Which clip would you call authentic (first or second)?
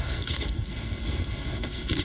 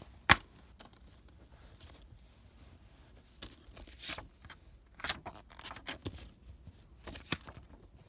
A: second